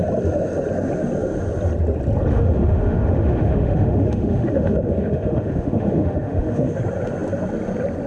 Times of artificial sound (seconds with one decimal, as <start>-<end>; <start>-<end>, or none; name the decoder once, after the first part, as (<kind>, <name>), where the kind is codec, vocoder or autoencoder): 2.3-6.8 (autoencoder, DAC-VAE)